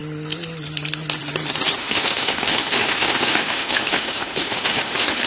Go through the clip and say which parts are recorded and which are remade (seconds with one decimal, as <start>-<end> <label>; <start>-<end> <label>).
0.0-1.8 recorded; 1.8-5.3 remade